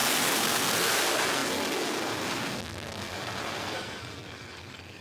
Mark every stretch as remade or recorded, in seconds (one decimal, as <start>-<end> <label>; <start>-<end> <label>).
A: 0.0-5.0 remade